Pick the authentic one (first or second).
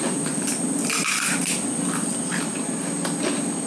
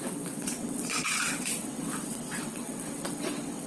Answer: first